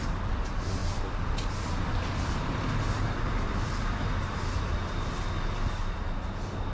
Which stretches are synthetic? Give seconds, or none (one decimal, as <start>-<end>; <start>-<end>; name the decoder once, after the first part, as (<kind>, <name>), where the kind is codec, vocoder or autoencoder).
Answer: none